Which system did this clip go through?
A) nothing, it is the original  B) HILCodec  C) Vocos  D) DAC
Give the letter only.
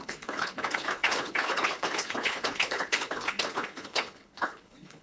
B